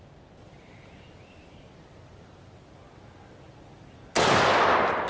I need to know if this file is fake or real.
real